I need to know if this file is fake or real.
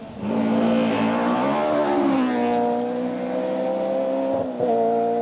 real